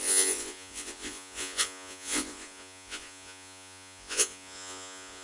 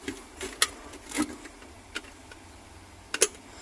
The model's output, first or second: first